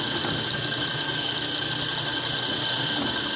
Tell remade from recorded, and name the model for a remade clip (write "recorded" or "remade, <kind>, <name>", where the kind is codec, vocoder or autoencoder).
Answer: recorded